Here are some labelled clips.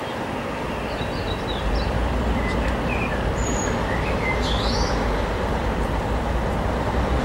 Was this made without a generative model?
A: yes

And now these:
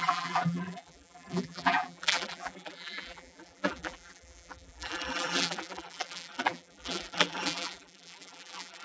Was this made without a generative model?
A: no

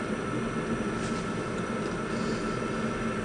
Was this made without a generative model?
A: yes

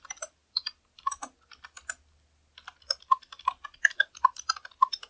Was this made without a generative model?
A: yes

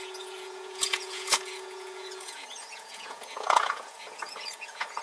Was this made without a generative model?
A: no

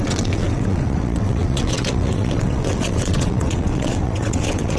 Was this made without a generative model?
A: no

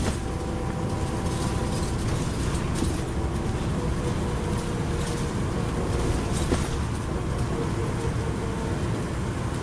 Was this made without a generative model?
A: yes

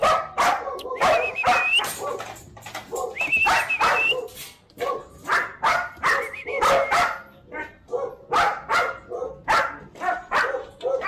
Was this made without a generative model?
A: yes